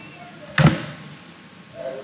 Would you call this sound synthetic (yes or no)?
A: no